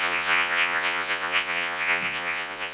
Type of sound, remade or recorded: remade